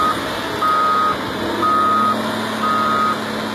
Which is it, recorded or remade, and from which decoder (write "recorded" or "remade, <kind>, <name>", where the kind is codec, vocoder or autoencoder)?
recorded